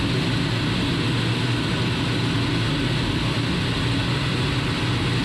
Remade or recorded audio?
recorded